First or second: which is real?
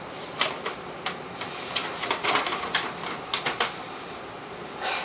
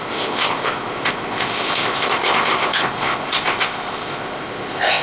first